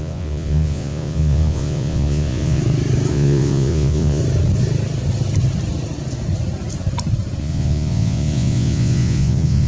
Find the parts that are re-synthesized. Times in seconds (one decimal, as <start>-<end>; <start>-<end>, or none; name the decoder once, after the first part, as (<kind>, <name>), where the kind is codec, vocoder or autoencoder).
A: 0.0-2.6 (vocoder, Vocos); 3.1-4.2; 7.4-9.7